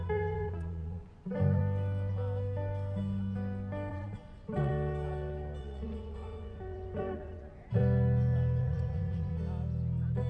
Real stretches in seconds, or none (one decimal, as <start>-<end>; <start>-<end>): 1.6-3.9; 4.7-5.6; 7.8-8.6; 9.3-10.3